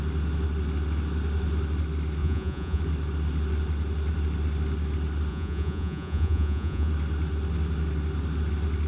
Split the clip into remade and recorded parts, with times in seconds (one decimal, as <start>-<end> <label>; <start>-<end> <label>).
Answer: 0.0-2.2 recorded; 2.2-2.8 remade; 2.8-5.3 recorded; 5.3-6.9 remade; 6.9-8.9 recorded